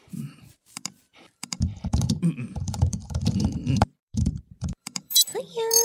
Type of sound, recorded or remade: remade